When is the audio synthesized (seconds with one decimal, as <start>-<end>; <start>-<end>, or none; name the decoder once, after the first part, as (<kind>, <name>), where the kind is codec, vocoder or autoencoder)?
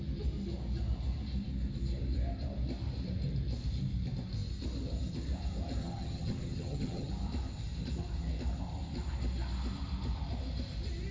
5.8-7.1 (vocoder, HiFi-GAN)